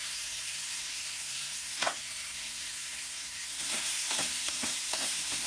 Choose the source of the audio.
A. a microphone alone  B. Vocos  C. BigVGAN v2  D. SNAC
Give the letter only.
D